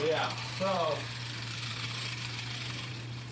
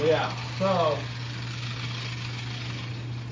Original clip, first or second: second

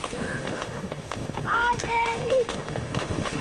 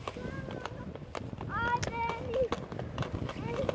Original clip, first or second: second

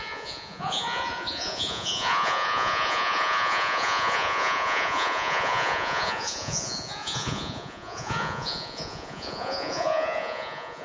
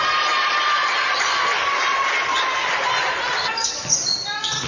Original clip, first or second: second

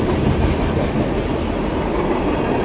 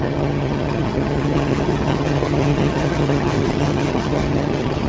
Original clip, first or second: first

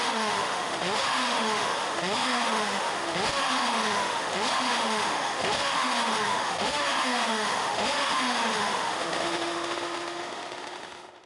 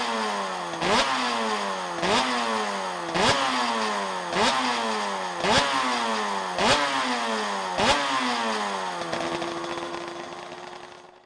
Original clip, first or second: second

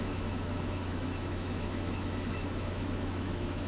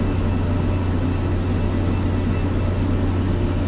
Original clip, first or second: second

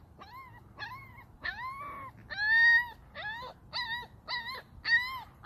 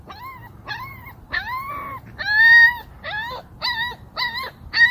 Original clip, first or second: first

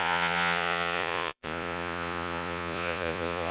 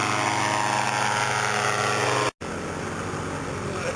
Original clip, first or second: second